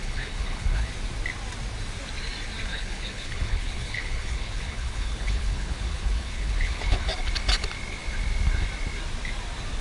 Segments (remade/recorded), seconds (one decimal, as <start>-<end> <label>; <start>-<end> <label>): 0.0-0.9 remade; 0.9-2.7 recorded; 2.7-7.1 remade; 7.1-9.8 recorded